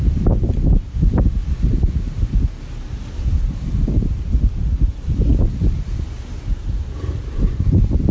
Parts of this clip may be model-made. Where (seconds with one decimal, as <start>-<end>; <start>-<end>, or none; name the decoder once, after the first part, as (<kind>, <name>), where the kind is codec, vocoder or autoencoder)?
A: 0.0-1.4 (vocoder, BigVGAN v2); 2.0-5.3; 6.7-8.1